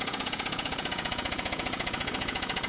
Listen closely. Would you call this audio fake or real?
fake